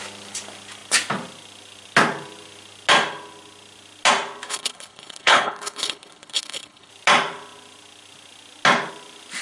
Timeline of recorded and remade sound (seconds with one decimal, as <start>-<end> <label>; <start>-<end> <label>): 0.0-4.5 recorded; 4.5-6.9 remade; 6.9-9.4 recorded